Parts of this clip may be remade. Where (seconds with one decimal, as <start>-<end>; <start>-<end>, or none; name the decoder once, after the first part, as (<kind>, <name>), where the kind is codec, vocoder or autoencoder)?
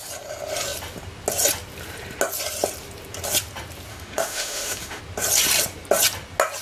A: 3.9-5.0 (autoencoder, DAC-VAE)